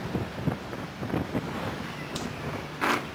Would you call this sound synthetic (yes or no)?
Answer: no